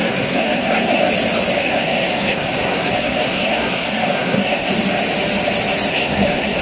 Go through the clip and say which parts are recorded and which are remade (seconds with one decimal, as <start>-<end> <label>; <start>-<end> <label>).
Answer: 0.0-1.1 remade; 1.1-1.6 recorded; 1.6-4.7 remade; 4.7-5.9 recorded; 5.9-6.6 remade